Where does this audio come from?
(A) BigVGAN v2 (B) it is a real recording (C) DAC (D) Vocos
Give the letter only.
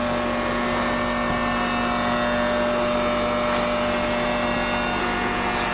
B